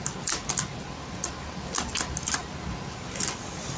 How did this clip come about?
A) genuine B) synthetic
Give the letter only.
A